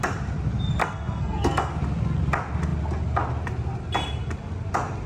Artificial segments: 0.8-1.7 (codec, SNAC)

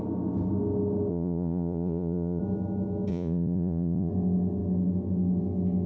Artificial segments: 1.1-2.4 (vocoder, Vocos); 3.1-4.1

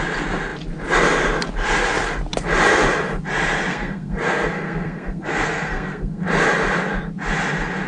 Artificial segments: 3.7-6.2 (codec, SNAC)

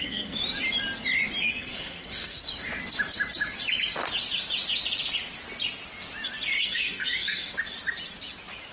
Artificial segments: 0.0-0.4 (codec, SNAC); 1.4-2.4; 6.6-7.5

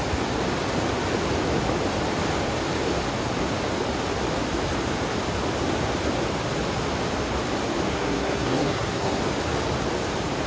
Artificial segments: 7.9-9.2 (codec, SNAC)

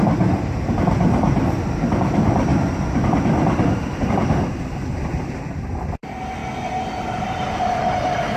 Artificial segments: 0.0-6.4 (vocoder, BigVGAN v2); 7.0-8.4